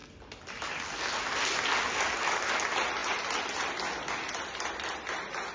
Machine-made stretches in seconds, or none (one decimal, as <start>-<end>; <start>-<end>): none